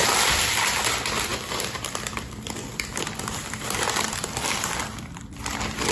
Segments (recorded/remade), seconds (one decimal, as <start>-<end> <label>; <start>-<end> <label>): 0.0-5.9 remade